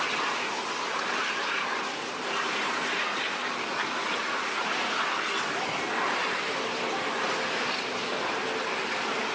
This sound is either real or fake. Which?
real